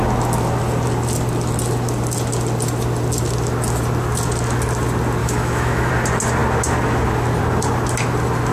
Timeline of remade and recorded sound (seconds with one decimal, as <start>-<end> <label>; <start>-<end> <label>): 0.0-5.2 recorded; 5.2-5.9 remade; 5.9-8.5 recorded